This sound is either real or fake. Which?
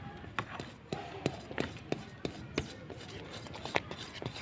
real